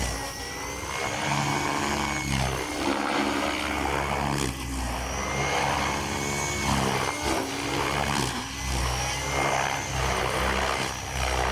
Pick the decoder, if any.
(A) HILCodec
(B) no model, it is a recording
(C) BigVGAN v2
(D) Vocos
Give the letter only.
B